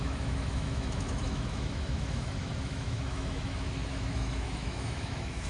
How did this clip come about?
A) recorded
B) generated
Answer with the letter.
B